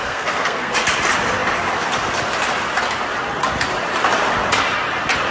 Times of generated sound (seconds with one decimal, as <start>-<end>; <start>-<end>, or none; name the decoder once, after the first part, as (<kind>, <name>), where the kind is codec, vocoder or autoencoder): 0.0-0.7 (codec, SNAC)